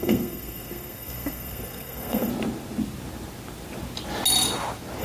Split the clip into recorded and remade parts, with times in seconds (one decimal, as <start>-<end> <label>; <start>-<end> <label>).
0.0-2.3 remade; 2.3-5.0 recorded